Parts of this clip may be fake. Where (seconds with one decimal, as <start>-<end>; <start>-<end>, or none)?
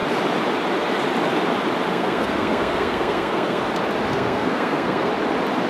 1.9-3.6; 4.1-5.1